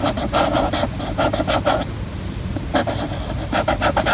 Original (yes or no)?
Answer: no